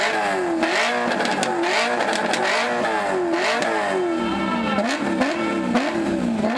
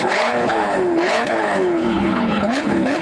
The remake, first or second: second